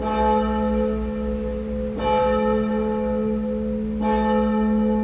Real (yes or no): yes